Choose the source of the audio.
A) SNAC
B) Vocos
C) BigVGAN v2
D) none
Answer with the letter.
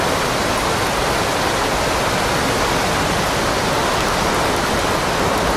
D